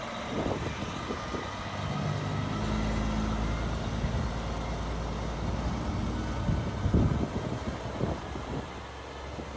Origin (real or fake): real